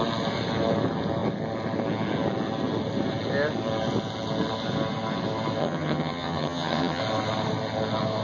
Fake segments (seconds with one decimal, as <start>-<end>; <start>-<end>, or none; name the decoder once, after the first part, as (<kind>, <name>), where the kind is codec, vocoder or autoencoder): 5.6-7.0 (vocoder, HiFi-GAN)